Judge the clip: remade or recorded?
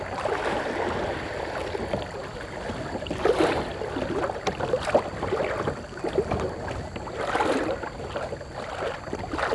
recorded